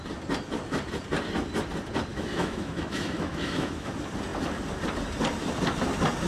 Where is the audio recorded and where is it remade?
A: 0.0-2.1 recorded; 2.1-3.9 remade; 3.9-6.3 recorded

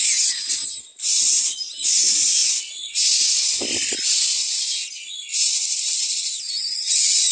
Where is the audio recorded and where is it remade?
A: 0.0-5.6 recorded; 5.6-6.3 remade; 6.3-7.3 recorded

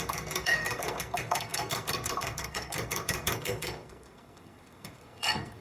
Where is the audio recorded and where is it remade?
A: 0.0-5.6 remade

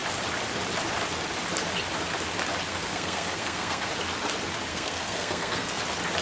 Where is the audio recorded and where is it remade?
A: 0.0-2.7 recorded; 2.7-3.9 remade; 3.9-4.7 recorded; 4.7-5.8 remade; 5.8-6.2 recorded

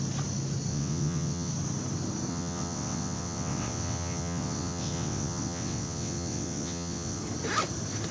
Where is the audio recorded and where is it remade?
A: 0.0-0.7 recorded; 0.7-1.5 remade; 1.5-2.3 recorded; 2.3-7.2 remade; 7.2-8.1 recorded

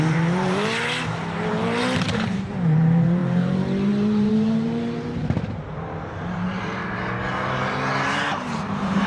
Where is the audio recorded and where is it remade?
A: 0.0-0.7 remade; 0.7-1.5 recorded; 1.5-6.8 remade; 6.8-8.1 recorded; 8.1-9.1 remade

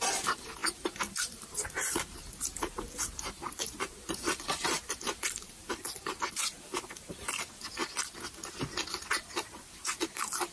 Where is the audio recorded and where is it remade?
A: 0.0-7.8 remade; 7.8-9.4 recorded; 9.4-10.5 remade